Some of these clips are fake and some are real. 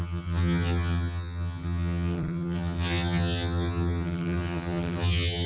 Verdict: fake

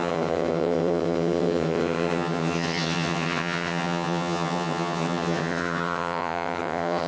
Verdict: fake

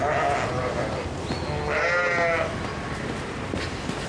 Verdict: real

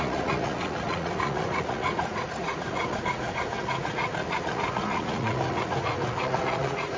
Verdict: fake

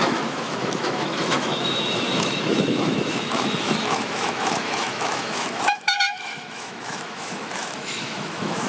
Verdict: fake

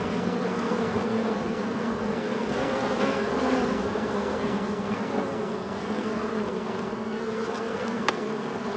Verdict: fake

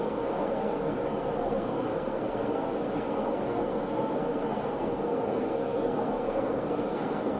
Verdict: fake